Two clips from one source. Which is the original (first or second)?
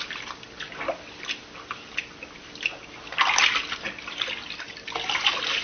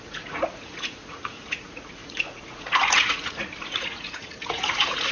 first